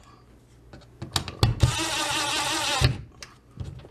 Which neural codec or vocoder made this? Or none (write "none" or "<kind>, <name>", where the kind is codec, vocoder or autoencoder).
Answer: none